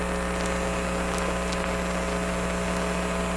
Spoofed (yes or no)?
no